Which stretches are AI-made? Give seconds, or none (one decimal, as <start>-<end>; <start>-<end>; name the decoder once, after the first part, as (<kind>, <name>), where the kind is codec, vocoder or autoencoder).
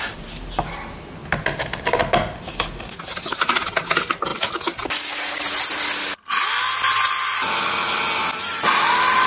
none